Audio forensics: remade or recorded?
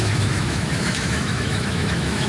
remade